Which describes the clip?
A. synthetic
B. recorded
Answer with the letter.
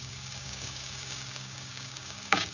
A